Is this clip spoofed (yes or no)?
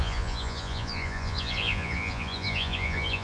yes